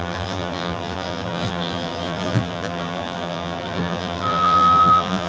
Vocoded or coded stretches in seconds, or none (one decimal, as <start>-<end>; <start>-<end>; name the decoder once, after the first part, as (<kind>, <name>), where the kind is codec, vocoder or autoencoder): 0.0-5.3 (vocoder, BigVGAN v2)